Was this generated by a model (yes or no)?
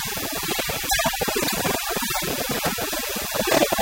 no